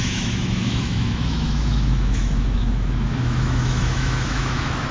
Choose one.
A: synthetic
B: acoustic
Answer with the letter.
A